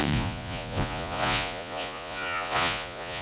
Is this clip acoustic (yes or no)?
no